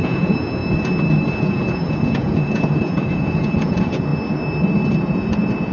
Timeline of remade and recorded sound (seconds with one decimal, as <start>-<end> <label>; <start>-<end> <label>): 0.0-0.6 remade; 0.6-1.4 recorded; 1.4-4.1 remade; 4.1-5.0 recorded; 5.0-5.7 remade